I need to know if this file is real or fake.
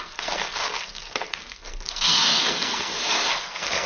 fake